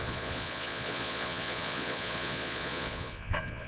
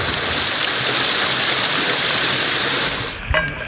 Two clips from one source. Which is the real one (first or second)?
second